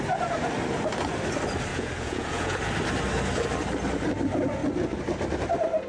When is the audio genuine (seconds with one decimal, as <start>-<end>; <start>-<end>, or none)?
0.0-1.7; 2.6-5.9